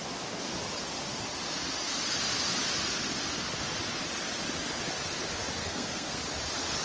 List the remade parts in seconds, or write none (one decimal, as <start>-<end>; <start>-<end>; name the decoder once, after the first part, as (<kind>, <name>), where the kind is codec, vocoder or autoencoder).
5.6-6.2 (codec, SNAC)